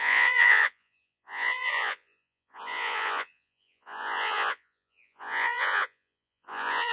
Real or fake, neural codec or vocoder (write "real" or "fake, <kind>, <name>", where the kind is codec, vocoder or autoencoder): fake, vocoder, Vocos